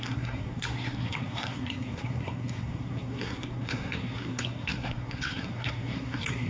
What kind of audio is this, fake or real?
fake